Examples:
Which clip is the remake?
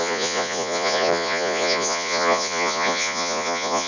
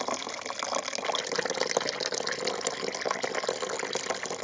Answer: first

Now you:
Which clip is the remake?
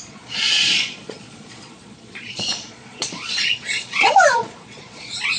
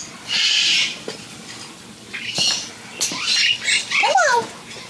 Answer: first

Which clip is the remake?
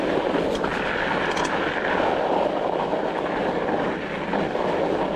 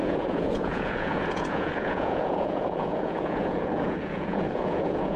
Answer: second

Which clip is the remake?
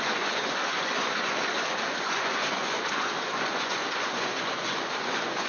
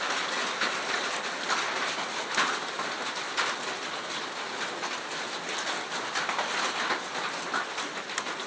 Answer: first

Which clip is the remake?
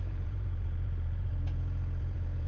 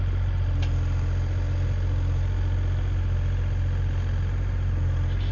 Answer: first